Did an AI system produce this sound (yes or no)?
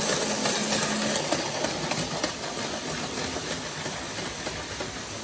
no